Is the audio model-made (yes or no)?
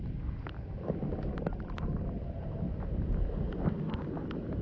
no